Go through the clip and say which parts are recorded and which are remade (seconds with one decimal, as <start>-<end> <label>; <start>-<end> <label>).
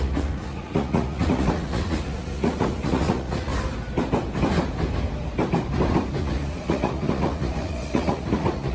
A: 0.0-3.5 remade; 3.5-6.2 recorded; 6.2-8.7 remade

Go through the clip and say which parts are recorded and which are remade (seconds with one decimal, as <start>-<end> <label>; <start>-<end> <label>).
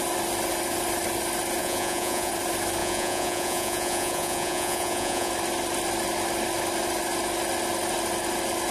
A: 0.0-1.6 recorded; 1.6-2.3 remade; 2.3-2.8 recorded; 2.8-5.3 remade; 5.3-8.7 recorded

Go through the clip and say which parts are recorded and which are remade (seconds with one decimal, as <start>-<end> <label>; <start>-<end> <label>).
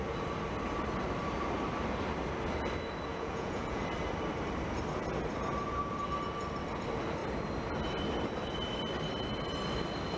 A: 0.0-3.1 recorded; 3.1-3.8 remade; 3.8-10.2 recorded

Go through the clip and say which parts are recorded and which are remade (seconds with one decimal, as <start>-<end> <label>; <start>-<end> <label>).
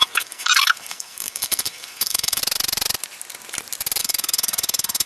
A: 0.0-2.4 remade; 2.4-4.0 recorded; 4.0-5.1 remade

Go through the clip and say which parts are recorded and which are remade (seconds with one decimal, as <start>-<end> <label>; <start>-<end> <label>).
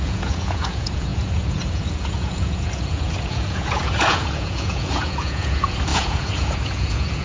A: 0.0-7.2 remade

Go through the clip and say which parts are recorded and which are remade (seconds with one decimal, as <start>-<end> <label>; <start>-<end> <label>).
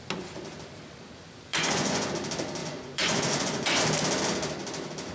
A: 0.0-1.5 recorded; 1.5-2.1 remade; 2.1-2.6 recorded; 2.6-3.8 remade; 3.8-5.1 recorded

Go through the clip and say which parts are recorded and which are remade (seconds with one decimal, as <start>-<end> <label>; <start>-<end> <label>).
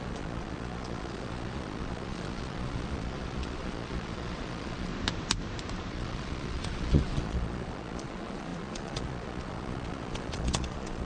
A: 0.0-4.9 remade; 4.9-5.9 recorded; 5.9-11.1 remade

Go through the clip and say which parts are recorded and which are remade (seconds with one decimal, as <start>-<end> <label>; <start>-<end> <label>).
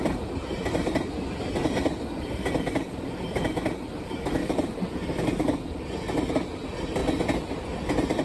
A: 0.0-8.2 recorded